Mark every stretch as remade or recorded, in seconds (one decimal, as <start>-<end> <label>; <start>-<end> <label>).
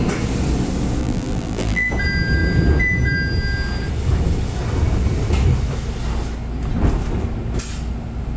0.0-1.0 recorded; 1.0-1.9 remade; 1.9-8.4 recorded